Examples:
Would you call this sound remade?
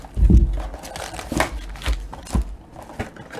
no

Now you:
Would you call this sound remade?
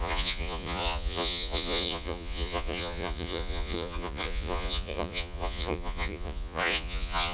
yes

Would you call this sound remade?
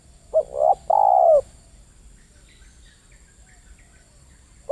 no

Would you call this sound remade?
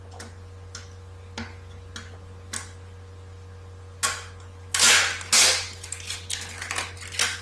no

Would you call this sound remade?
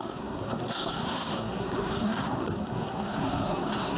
yes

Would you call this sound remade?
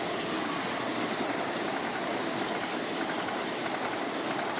no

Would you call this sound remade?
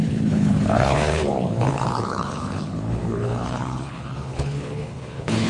yes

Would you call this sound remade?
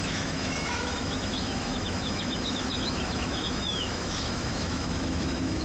yes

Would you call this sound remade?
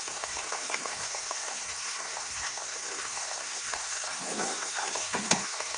yes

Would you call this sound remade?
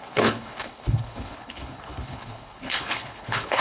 yes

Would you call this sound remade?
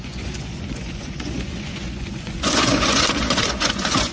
yes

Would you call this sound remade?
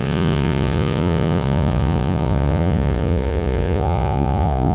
yes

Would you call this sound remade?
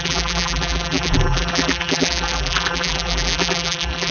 yes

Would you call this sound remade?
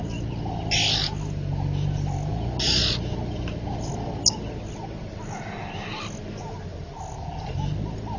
no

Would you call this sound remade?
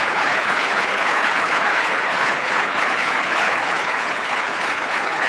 yes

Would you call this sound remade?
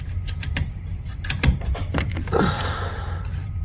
yes